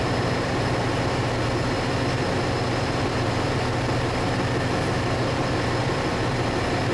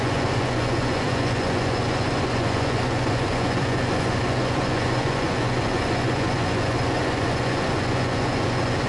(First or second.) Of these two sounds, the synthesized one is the second